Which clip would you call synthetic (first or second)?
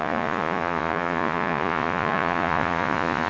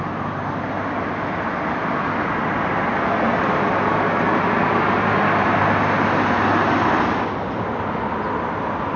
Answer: first